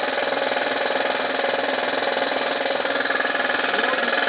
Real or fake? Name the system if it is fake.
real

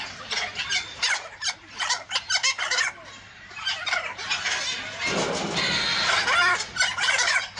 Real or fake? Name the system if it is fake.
real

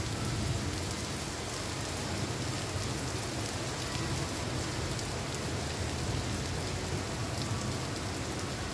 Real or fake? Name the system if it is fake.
real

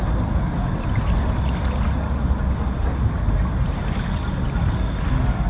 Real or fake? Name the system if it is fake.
real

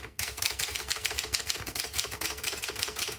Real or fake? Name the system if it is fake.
fake, codec, SNAC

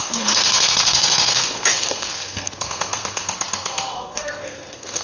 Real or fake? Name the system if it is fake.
fake, codec, SNAC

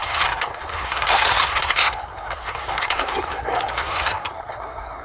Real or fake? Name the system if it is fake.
fake, codec, SNAC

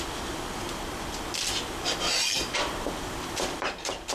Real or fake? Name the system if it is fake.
real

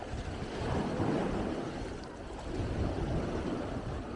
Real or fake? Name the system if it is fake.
real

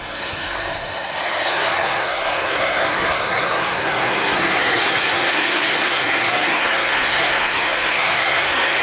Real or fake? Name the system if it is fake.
fake, codec, SNAC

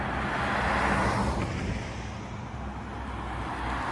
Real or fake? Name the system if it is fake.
real